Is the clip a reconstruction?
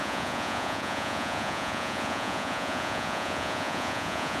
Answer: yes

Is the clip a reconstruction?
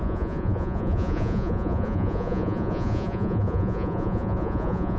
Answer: yes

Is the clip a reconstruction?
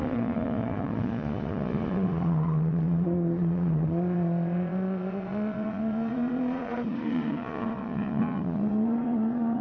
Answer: yes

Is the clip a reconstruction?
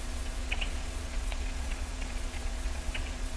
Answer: yes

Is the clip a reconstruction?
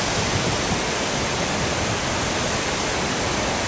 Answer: no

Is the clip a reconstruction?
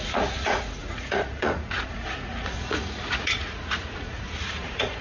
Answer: yes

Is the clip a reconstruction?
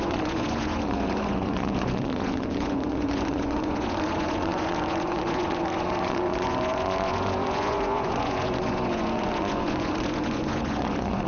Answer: yes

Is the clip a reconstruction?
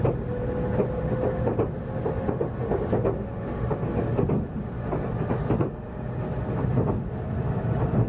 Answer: no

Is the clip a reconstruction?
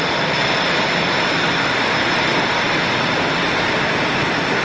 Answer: no